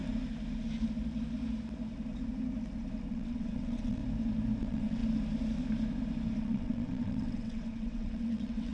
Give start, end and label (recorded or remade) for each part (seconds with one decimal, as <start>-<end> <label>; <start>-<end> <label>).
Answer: 0.0-3.1 recorded; 3.1-4.0 remade; 4.0-4.6 recorded; 4.6-5.0 remade; 5.0-6.4 recorded; 6.4-8.7 remade